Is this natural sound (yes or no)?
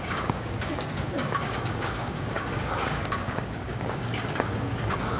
no